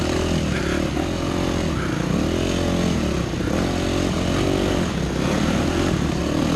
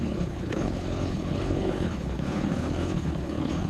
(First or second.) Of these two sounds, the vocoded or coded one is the second